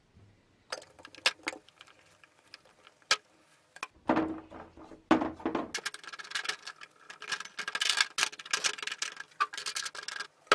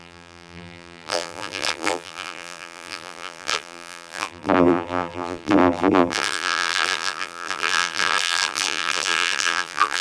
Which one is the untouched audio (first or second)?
first